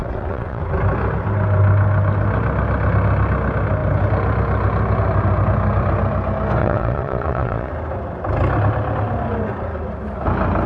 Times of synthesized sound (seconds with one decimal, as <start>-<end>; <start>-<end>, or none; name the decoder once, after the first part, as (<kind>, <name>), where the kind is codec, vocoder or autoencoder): 0.0-0.6 (vocoder, WaveNeXt); 6.6-7.7